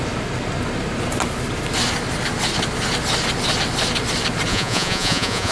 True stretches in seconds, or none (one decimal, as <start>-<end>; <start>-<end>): 0.0-4.5